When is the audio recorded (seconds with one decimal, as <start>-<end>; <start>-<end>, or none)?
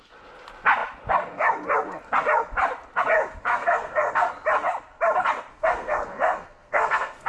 0.0-3.5; 4.3-5.5